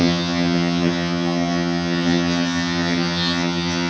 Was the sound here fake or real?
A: fake